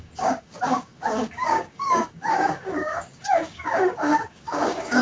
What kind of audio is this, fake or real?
fake